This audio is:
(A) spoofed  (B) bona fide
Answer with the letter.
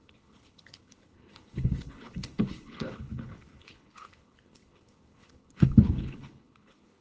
A